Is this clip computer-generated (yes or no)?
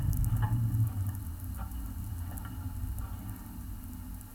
no